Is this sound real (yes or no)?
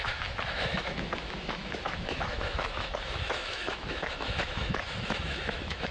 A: no